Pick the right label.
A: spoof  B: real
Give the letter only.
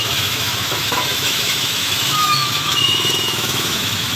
A